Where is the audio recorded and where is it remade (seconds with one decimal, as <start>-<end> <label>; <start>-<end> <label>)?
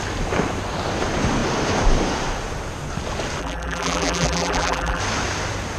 0.0-3.4 recorded; 3.4-5.0 remade; 5.0-5.8 recorded